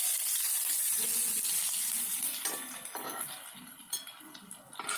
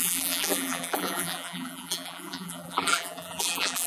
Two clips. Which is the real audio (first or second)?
first